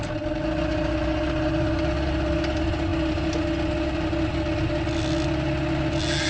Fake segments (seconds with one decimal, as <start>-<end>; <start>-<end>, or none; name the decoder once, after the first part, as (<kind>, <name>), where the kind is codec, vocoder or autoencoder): none

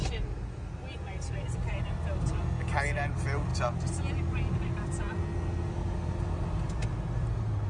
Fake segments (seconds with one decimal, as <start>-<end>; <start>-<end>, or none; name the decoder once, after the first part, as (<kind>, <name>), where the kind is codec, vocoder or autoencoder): none

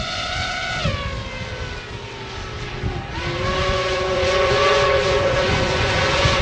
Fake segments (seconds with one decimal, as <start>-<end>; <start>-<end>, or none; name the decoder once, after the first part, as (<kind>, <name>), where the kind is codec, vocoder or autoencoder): 0.0-0.7 (vocoder, Vocos); 3.6-6.4

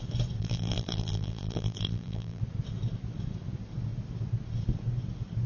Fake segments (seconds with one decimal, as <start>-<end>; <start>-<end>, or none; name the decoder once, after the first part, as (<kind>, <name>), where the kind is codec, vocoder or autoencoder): 0.4-2.4 (vocoder, BigVGAN v2)

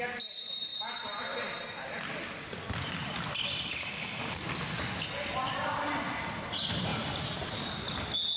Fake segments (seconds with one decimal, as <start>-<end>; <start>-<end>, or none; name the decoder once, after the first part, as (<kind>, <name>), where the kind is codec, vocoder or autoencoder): 0.7-1.6 (vocoder, BigVGAN v2)

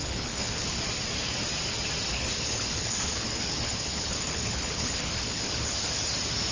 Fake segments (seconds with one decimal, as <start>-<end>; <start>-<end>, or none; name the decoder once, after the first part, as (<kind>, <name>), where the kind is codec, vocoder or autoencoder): 0.0-0.8 (codec, HILCodec); 2.1-6.0

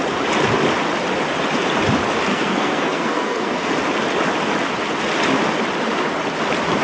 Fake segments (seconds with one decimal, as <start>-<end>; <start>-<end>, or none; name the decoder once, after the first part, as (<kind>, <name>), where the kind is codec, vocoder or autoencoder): 2.3-3.7 (codec, SNAC)

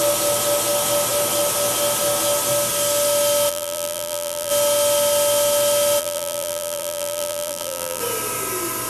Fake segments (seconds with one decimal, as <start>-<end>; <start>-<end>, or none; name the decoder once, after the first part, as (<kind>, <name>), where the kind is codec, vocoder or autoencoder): 3.5-4.5 (vocoder, BigVGAN v2); 6.0-8.0